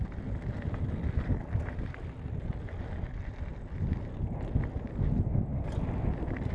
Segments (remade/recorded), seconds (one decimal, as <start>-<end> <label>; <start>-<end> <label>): 0.0-6.5 recorded